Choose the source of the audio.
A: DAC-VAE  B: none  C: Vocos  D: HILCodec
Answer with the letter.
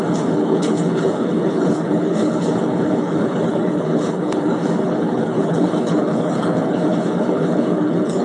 D